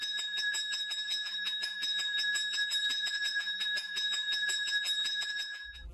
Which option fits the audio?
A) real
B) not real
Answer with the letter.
B